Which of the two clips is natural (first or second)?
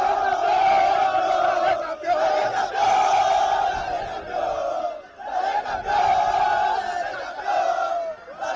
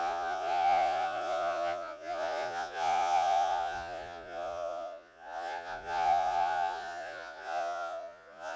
first